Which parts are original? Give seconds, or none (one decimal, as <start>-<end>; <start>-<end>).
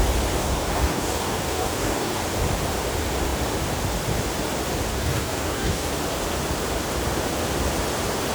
0.0-0.4; 2.2-4.9; 5.9-8.3